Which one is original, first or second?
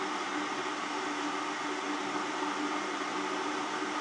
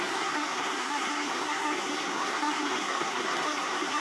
first